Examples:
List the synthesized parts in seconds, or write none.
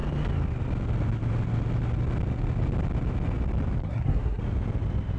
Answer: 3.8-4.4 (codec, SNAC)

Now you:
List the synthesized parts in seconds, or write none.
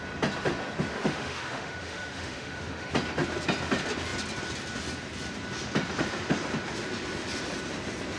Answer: 0.9-2.9 (autoencoder, DAC-VAE)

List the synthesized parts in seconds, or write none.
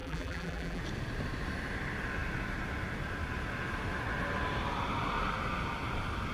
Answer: 0.0-0.8 (vocoder, BigVGAN v2)